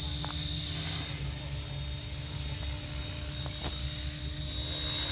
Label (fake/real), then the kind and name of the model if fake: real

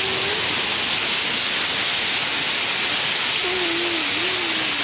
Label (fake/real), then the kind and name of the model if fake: real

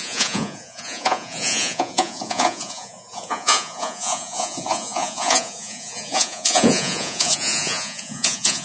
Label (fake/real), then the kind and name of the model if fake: fake, vocoder, Vocos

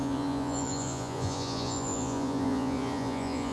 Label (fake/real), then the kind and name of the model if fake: fake, vocoder, Vocos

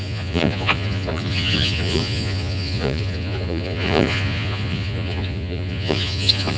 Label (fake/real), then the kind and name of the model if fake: fake, vocoder, Vocos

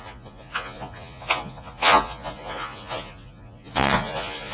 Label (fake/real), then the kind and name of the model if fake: fake, vocoder, Vocos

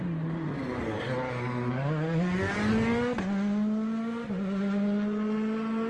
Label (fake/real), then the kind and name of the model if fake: real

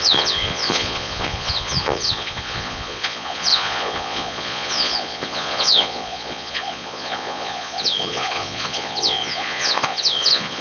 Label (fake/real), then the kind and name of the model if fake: fake, vocoder, Vocos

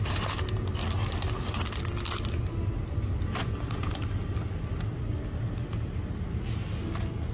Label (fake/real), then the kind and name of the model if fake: real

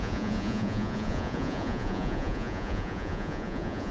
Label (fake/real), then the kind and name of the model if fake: fake, vocoder, Vocos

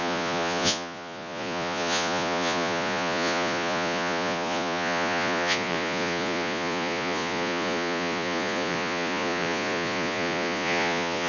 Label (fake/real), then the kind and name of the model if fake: fake, vocoder, Vocos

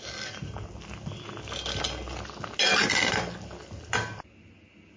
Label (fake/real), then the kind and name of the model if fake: real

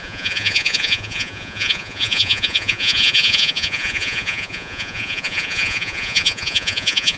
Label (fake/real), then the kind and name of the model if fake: fake, vocoder, Vocos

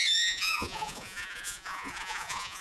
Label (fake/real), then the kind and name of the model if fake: fake, vocoder, Vocos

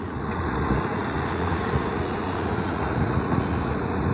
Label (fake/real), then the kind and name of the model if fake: fake, vocoder, Vocos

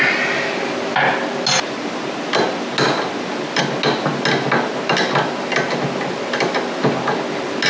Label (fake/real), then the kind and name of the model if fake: real